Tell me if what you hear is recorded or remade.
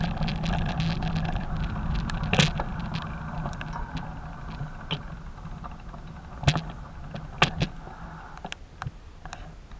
recorded